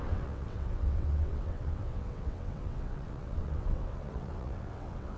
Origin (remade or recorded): remade